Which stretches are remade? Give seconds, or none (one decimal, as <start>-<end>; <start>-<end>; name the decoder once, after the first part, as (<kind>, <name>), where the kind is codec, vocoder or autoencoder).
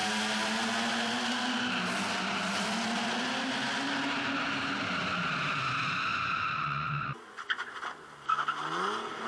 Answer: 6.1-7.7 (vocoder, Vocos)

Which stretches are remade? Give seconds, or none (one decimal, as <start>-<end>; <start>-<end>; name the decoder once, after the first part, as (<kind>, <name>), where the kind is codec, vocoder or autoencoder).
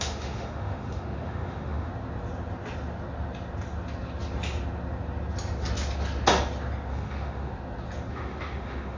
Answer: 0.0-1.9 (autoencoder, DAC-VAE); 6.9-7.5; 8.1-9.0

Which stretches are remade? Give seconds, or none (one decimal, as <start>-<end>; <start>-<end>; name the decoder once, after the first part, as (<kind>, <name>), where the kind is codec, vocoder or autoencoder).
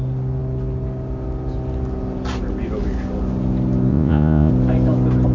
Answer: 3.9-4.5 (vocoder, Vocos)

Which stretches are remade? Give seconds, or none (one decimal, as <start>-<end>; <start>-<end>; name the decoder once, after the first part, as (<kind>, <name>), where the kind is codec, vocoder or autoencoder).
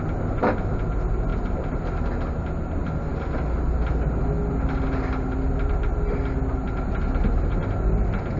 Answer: none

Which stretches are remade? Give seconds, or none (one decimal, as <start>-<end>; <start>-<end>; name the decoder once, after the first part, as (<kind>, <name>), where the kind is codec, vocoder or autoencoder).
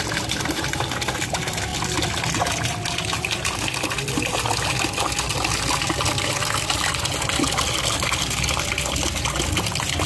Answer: none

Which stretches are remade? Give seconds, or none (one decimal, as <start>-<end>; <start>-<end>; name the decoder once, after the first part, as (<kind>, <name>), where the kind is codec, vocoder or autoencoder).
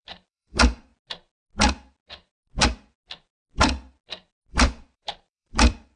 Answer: 0.0-0.9 (vocoder, BigVGAN v2); 4.5-6.0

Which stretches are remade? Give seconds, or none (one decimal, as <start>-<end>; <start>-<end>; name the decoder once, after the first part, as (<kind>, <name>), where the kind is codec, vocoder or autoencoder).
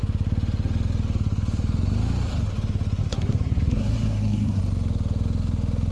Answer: 3.0-4.6 (codec, SNAC)